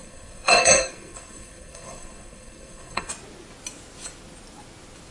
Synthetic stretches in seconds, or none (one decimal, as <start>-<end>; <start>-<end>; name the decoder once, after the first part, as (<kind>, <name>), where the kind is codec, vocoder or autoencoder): 0.0-3.1 (codec, SNAC)